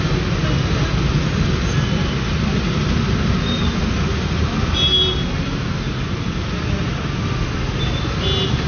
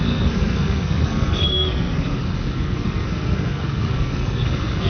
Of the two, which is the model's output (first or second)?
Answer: second